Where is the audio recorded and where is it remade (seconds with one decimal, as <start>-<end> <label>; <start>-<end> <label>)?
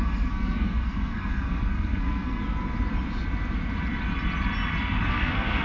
0.0-2.4 remade; 2.4-5.1 recorded; 5.1-5.6 remade